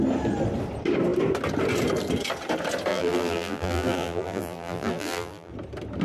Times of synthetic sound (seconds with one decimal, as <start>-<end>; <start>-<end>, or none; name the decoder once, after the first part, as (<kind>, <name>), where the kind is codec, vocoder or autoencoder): 2.9-5.5 (vocoder, BigVGAN v2)